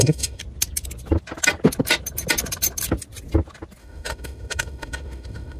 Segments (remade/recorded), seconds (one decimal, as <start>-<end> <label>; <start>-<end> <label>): 0.0-0.4 remade; 0.4-3.8 recorded; 3.8-5.6 remade